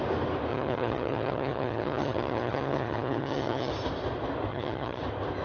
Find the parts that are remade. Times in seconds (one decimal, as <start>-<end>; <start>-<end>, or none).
0.5-3.7; 4.5-5.0